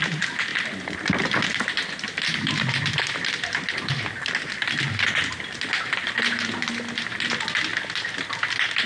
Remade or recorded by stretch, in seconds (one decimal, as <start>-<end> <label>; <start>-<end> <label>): 0.0-8.9 recorded